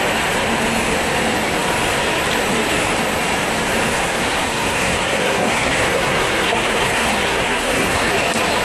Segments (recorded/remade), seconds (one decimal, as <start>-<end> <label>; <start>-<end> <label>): 0.0-3.9 recorded; 3.9-8.1 remade; 8.1-8.6 recorded

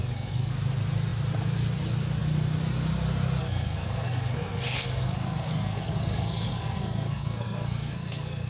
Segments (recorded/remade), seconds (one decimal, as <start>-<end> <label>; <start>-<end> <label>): 0.0-0.5 remade; 0.5-3.4 recorded; 3.4-8.5 remade

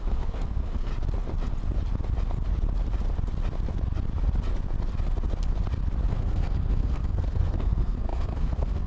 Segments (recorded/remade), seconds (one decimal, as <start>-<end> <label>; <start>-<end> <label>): 0.0-0.9 remade; 0.9-6.1 recorded; 6.1-8.9 remade